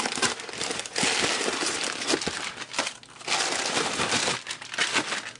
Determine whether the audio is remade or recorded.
recorded